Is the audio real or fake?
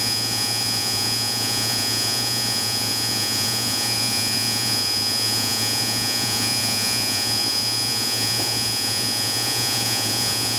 fake